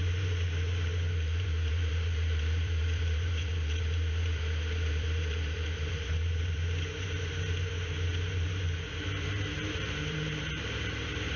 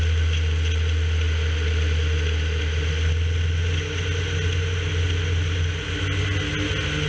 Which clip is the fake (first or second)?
first